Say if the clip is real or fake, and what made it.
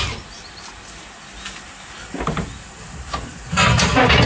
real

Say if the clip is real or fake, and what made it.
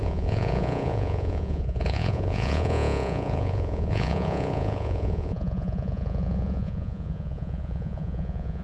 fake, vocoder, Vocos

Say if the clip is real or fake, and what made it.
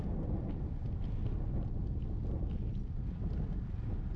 real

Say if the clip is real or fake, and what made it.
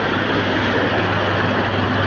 real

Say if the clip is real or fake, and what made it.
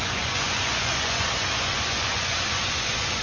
fake, vocoder, Vocos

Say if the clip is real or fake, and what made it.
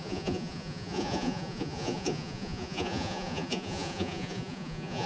fake, vocoder, Vocos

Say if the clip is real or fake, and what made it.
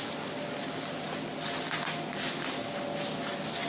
real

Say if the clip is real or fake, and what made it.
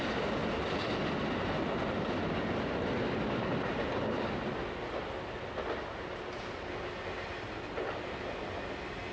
real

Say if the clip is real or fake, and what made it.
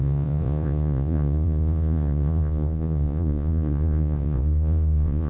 fake, vocoder, Vocos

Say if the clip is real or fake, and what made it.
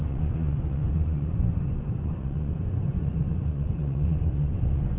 fake, vocoder, Vocos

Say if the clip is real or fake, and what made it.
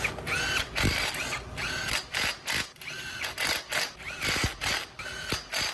real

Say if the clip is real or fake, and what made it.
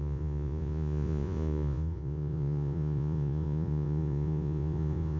fake, vocoder, Vocos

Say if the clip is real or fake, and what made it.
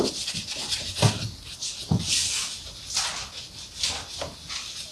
real